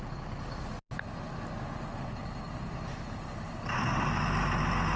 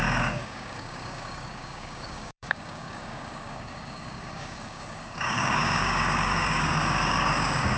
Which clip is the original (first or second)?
first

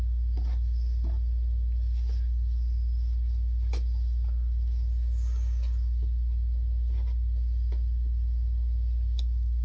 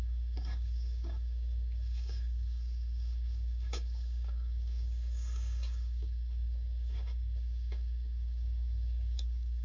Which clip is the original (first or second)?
first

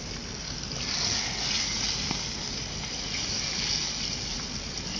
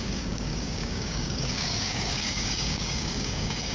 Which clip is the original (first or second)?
first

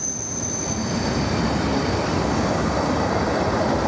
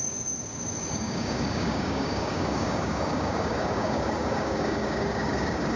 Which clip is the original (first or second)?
first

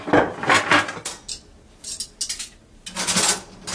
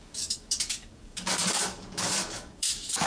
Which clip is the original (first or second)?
first